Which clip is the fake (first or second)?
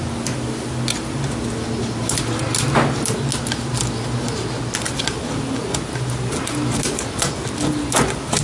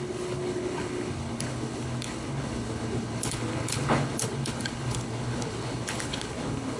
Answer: second